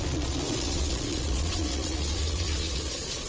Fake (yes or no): yes